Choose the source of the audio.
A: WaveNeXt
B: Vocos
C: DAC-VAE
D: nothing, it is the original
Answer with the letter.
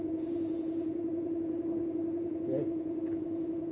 B